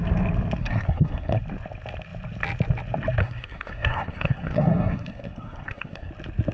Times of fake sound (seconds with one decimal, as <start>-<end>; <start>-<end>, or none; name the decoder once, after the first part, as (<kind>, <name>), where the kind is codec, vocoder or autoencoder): 0.6-1.4 (codec, SNAC); 3.2-6.1